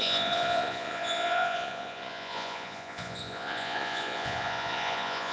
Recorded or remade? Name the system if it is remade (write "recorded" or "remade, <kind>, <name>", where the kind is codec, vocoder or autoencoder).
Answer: remade, vocoder, Vocos